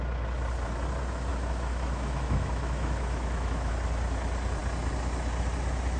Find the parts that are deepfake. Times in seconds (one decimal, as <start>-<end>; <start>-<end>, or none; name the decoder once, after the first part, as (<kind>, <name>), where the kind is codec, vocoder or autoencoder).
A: 1.3-3.7 (autoencoder, DAC-VAE)